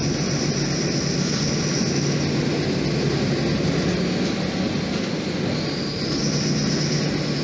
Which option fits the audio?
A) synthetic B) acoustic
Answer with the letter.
B